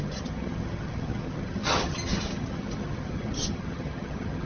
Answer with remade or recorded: remade